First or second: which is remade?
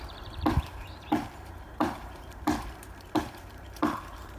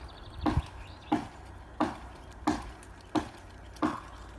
first